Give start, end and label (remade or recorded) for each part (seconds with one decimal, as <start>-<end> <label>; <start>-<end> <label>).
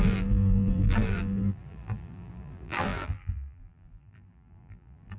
0.0-5.2 remade